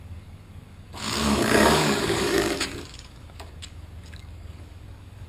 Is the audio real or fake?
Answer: fake